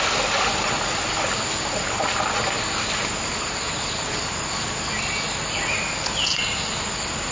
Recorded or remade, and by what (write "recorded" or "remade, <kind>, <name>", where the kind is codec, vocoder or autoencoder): recorded